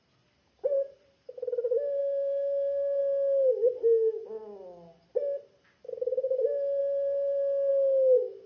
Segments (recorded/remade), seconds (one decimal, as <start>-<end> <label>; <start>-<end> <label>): 0.0-2.0 recorded; 2.0-3.0 remade; 3.0-8.5 recorded